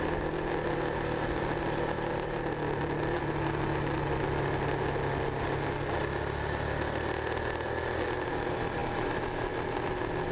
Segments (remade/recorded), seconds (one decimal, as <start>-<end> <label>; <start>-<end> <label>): 0.0-10.3 recorded